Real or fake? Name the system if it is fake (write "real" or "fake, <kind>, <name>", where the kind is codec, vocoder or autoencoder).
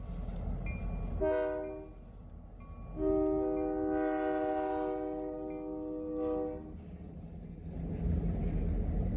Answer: real